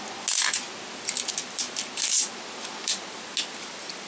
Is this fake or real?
real